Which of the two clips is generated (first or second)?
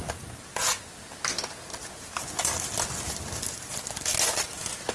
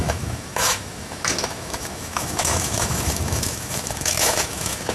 second